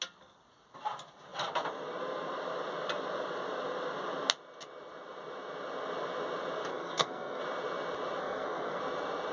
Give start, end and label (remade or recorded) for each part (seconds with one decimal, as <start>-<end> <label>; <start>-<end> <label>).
0.0-6.7 recorded; 6.7-7.4 remade; 7.4-8.2 recorded; 8.2-8.8 remade; 8.8-9.3 recorded